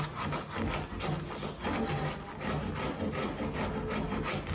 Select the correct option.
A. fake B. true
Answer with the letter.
B